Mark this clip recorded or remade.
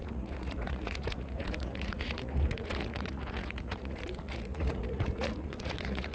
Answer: remade